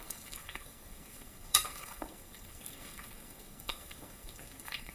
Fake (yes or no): yes